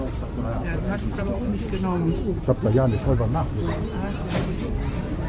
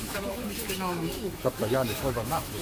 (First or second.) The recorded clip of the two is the first